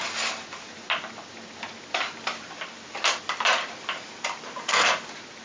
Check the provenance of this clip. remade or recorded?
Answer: recorded